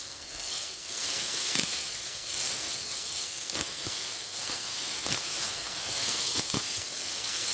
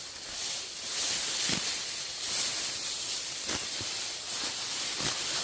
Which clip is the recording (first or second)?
second